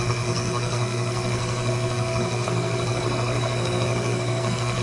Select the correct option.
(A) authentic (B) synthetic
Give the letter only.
B